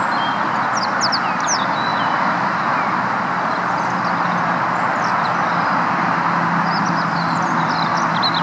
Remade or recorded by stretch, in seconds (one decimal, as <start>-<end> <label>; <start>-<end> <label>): 0.0-8.4 recorded